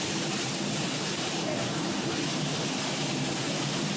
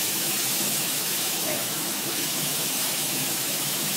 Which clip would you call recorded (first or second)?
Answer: first